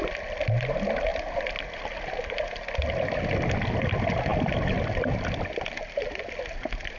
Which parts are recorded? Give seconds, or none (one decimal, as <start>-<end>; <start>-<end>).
0.0-7.0